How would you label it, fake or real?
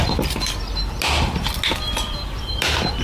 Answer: real